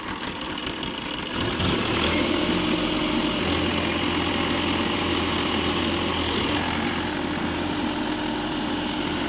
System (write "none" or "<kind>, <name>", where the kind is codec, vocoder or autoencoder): none